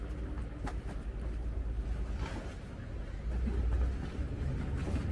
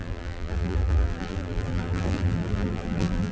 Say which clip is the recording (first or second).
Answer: first